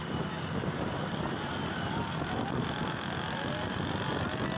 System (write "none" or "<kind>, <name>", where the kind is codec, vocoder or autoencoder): none